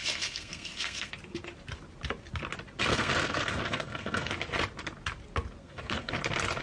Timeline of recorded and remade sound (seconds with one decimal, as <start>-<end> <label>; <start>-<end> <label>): 0.0-1.1 remade; 1.1-2.9 recorded; 2.9-4.3 remade; 4.3-5.6 recorded; 5.6-6.1 remade; 6.1-6.6 recorded